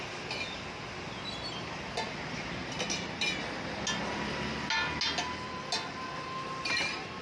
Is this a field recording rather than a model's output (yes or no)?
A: yes